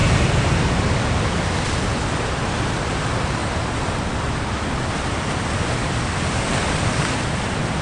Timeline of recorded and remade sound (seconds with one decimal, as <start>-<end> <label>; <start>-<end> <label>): 0.0-7.8 recorded